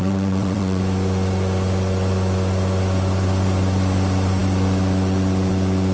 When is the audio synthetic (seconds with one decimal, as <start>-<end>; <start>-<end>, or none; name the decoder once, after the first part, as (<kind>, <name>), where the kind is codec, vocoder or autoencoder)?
0.0-0.8 (vocoder, WaveNeXt)